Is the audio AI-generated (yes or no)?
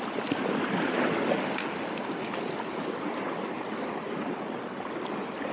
no